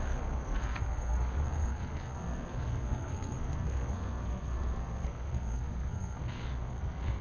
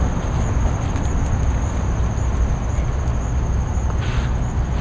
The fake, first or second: first